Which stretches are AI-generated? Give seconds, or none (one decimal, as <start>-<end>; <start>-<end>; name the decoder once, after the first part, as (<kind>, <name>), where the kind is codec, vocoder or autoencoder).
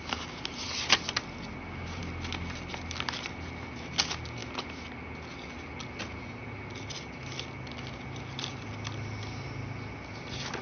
none